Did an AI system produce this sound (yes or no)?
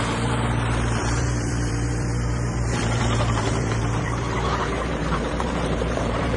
yes